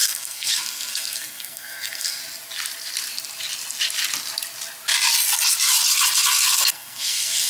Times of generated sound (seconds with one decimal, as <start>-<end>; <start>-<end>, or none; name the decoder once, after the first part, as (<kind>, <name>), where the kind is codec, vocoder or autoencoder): 0.0-2.2 (codec, SNAC); 6.3-7.5